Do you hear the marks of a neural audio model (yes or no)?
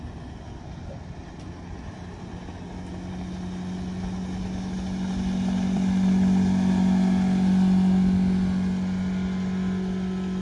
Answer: no